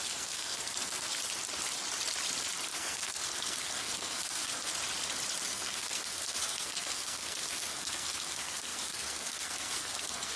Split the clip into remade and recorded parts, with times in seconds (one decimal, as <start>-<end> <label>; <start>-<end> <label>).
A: 0.0-1.2 remade; 1.2-2.7 recorded; 2.7-4.7 remade; 4.7-5.4 recorded; 5.4-10.4 remade